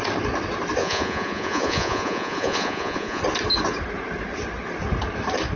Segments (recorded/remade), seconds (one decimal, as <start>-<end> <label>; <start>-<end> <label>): 0.0-0.8 recorded; 0.8-3.2 remade; 3.2-5.6 recorded